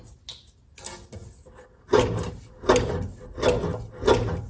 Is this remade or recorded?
recorded